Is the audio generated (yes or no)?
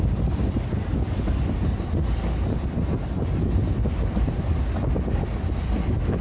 no